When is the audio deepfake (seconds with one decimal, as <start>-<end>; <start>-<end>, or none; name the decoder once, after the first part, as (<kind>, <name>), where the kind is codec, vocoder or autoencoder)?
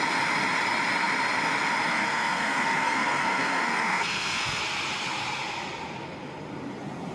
1.9-4.6 (codec, SNAC)